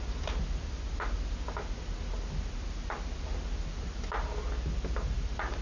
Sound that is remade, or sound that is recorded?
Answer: recorded